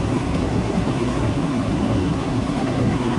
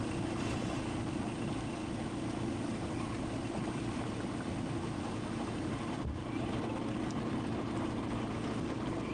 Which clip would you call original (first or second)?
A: second